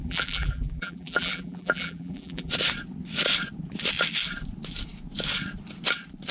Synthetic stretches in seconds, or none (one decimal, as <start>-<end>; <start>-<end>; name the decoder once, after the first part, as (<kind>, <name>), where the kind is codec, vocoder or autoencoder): 0.0-2.5 (vocoder, BigVGAN v2)